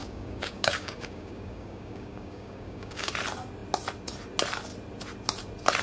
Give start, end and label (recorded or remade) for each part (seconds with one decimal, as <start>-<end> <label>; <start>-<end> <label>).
0.0-3.1 remade; 3.1-5.8 recorded